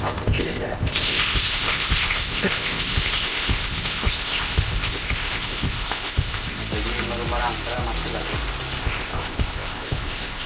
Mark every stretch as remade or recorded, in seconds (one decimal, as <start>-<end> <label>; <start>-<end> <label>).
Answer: 0.0-6.6 remade; 6.6-8.8 recorded; 8.8-10.5 remade